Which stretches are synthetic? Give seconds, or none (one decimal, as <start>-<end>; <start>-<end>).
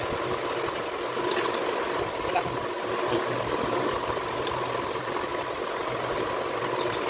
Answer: none